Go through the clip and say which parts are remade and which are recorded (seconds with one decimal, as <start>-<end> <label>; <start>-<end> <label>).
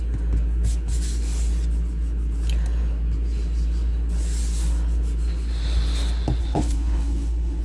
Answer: 0.0-6.4 recorded; 6.4-7.6 remade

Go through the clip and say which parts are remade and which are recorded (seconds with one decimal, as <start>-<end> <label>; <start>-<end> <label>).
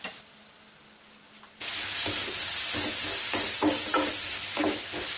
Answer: 0.0-5.2 recorded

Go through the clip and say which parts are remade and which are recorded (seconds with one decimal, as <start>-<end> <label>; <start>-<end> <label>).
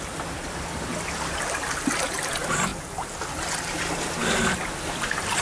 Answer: 0.0-5.4 recorded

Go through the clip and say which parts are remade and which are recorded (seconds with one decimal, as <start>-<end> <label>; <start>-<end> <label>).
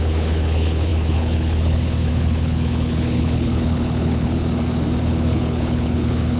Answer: 0.0-4.4 remade; 4.4-5.0 recorded; 5.0-6.4 remade